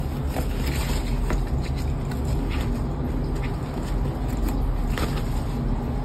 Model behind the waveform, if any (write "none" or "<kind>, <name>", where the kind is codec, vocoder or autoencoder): none